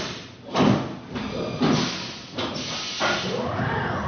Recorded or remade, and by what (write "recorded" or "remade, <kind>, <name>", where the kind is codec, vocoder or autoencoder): recorded